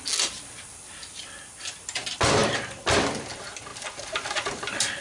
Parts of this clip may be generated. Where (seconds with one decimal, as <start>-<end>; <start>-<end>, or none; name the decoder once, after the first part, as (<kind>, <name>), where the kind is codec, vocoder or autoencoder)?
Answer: 2.4-3.3 (vocoder, BigVGAN v2); 3.7-5.0